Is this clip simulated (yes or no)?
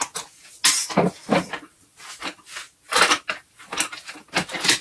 no